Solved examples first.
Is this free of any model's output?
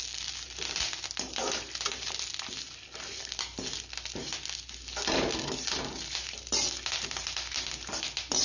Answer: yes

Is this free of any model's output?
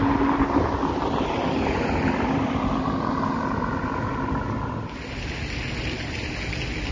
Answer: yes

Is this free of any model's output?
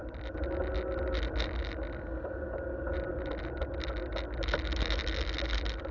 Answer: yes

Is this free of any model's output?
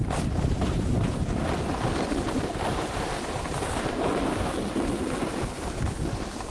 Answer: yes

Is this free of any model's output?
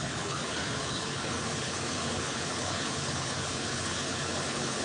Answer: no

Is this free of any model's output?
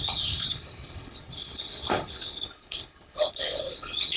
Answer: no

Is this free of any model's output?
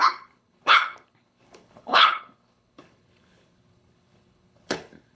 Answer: no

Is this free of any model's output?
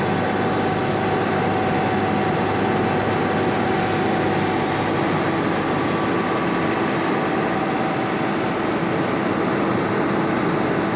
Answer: yes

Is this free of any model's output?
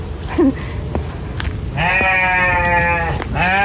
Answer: yes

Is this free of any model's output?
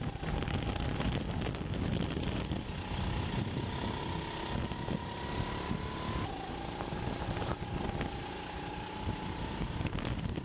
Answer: yes